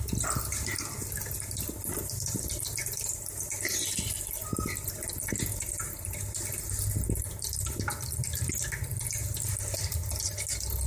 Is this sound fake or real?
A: real